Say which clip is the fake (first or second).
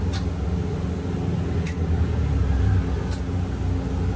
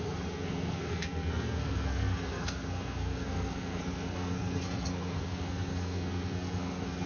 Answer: second